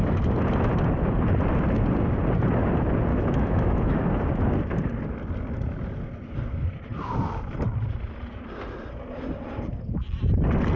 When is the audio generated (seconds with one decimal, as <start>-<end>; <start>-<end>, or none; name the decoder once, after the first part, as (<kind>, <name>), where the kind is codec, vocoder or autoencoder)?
3.1-3.9 (autoencoder, DAC-VAE)